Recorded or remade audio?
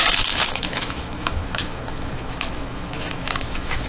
remade